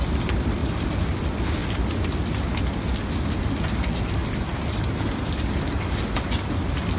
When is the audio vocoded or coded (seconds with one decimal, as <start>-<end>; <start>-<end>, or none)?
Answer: 1.6-2.8; 4.2-5.5